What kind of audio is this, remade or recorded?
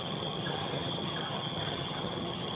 remade